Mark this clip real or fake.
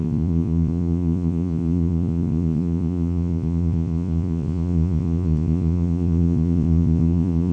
fake